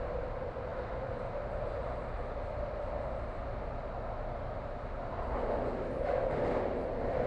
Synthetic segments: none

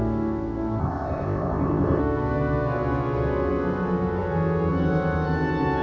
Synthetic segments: 0.8-2.0 (codec, ZipCodec)

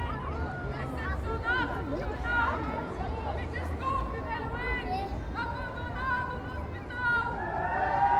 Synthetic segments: 2.3-4.2 (vocoder, Vocos)

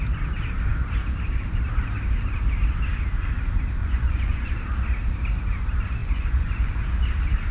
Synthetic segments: 3.8-4.5 (vocoder, Vocos); 6.0-6.8

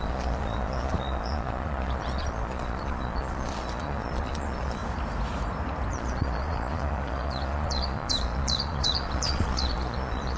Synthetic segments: 0.0-4.8 (vocoder, Vocos); 5.9-10.4

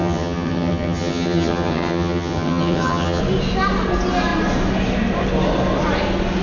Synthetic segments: 0.0-3.2 (vocoder, HiFi-GAN)